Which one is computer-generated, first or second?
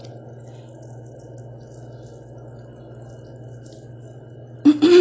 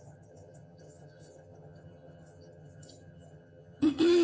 second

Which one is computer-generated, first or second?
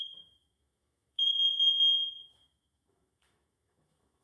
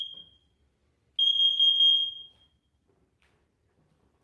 first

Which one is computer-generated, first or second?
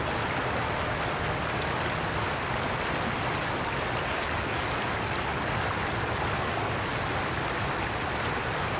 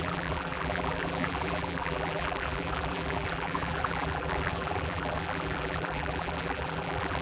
second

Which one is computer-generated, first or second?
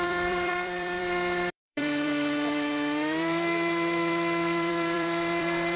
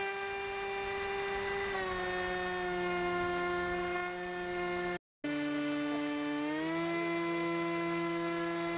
first